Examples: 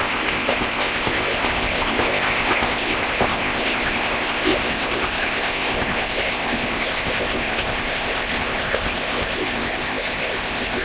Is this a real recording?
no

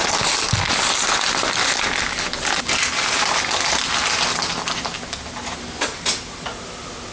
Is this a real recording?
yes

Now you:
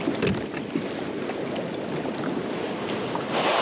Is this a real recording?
yes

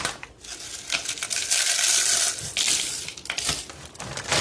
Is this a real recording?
yes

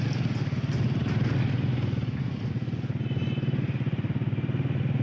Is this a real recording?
yes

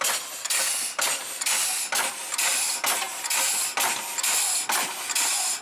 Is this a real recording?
yes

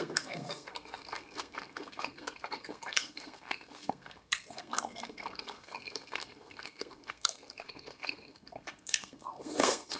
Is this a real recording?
no